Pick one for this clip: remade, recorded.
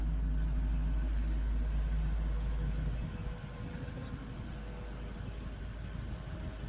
recorded